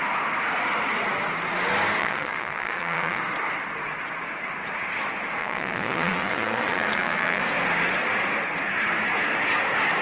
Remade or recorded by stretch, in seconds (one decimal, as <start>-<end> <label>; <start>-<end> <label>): 0.0-2.0 recorded; 2.0-3.2 remade; 3.2-5.4 recorded; 5.4-7.4 remade; 7.4-10.0 recorded